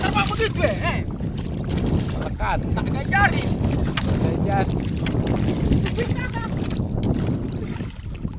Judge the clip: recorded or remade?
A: recorded